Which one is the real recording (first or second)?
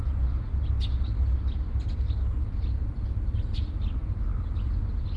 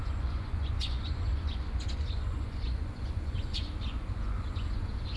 first